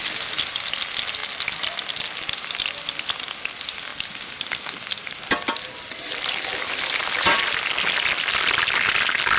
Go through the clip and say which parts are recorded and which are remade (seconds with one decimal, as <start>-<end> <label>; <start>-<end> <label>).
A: 0.0-9.4 recorded